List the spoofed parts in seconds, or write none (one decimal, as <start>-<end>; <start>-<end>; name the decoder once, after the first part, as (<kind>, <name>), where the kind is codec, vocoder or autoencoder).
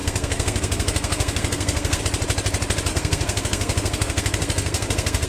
0.0-2.0 (codec, SNAC); 2.9-5.3